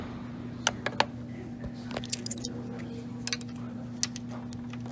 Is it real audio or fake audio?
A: real